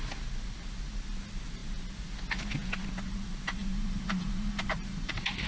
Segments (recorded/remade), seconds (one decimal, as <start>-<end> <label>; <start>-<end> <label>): 0.0-3.7 recorded; 3.7-5.1 remade; 5.1-5.5 recorded